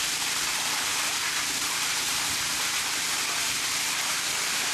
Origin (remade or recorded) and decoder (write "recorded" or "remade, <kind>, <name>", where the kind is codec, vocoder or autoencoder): remade, vocoder, BigVGAN v2